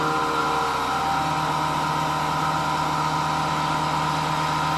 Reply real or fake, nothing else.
real